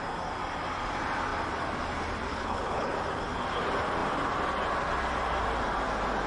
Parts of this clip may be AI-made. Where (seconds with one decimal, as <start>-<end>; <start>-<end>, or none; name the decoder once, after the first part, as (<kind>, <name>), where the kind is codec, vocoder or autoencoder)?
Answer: 2.3-2.9 (codec, HILCodec)